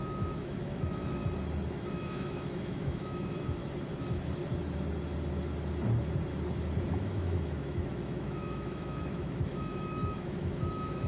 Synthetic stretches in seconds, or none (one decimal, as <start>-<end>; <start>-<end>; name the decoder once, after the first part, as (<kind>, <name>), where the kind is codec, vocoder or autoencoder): 0.0-1.2 (autoencoder, DAC-VAE); 1.7-3.6; 6.9-11.1